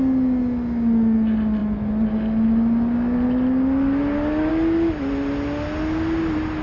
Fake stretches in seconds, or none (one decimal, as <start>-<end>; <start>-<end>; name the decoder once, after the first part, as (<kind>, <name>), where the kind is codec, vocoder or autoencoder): none